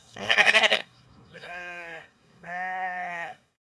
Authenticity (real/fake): fake